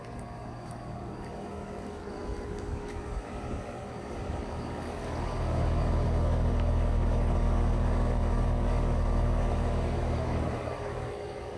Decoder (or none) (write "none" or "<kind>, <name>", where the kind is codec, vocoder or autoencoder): codec, DAC